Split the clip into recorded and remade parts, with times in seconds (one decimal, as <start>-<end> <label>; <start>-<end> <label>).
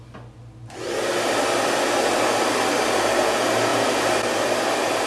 0.0-3.7 recorded; 3.7-5.1 remade